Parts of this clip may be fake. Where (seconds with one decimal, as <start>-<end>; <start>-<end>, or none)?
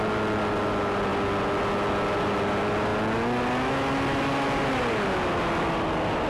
0.0-1.1; 1.9-2.9; 5.7-6.3